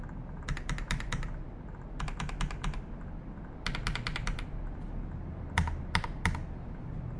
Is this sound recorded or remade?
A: recorded